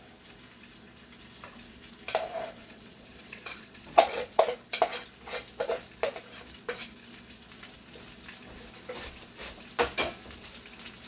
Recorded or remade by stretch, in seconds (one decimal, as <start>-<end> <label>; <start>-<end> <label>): 0.0-2.6 recorded; 2.6-4.4 remade; 4.4-11.1 recorded